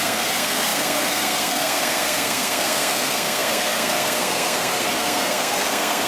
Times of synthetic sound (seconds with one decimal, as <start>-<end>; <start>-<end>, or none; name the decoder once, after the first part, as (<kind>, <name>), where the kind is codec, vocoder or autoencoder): 0.0-6.1 (codec, SNAC)